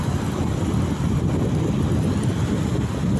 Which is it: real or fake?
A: real